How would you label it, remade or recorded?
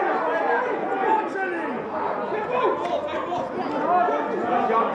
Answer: recorded